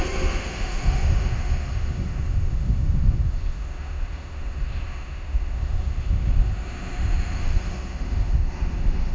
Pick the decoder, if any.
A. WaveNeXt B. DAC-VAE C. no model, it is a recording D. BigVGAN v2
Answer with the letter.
B